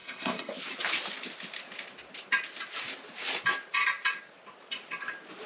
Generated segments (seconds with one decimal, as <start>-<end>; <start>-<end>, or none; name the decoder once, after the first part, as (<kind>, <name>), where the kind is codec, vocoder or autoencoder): 0.0-0.5 (codec, SNAC)